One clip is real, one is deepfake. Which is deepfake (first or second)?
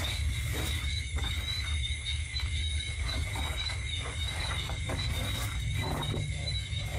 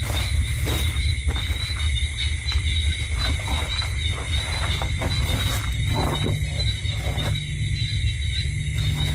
first